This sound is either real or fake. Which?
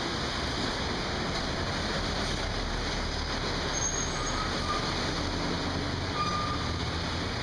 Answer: real